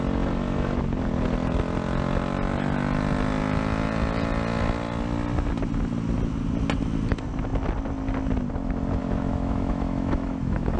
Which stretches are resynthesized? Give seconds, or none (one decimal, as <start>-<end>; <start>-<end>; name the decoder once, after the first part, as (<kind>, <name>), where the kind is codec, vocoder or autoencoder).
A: 9.0-10.8 (autoencoder, DAC-VAE)